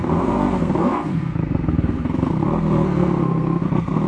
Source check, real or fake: fake